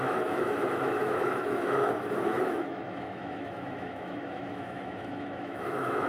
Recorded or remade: remade